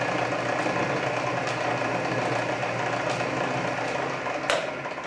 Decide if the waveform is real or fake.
real